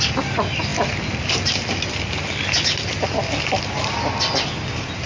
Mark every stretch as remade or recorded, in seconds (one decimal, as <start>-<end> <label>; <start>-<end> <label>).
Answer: 0.0-5.1 recorded